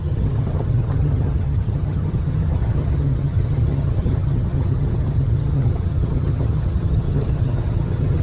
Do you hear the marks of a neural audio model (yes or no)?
yes